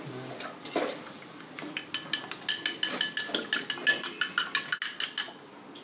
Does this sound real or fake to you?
real